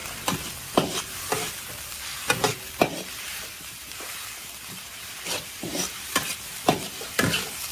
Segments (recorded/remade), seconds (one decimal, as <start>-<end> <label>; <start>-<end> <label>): 0.0-1.7 remade; 1.7-3.3 recorded; 3.3-6.5 remade; 6.5-7.7 recorded

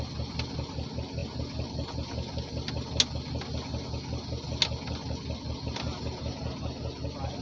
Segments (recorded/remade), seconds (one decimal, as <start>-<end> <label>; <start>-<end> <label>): 0.0-7.4 recorded

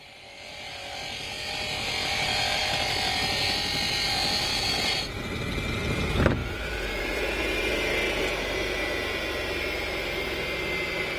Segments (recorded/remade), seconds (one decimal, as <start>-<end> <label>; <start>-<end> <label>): 0.0-4.5 recorded; 4.5-5.2 remade; 5.2-6.4 recorded; 6.4-8.2 remade; 8.2-11.2 recorded